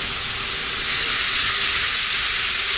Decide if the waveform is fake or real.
real